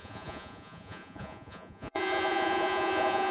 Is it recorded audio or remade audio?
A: remade